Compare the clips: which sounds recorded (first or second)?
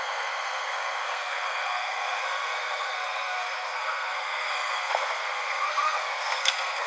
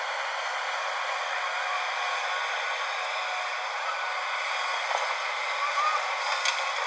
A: second